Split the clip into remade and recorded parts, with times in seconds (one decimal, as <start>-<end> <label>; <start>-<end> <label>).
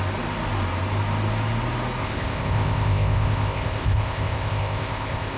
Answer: 0.0-2.0 recorded; 2.0-5.4 remade